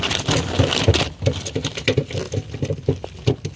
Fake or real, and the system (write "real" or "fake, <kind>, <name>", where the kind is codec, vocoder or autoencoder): real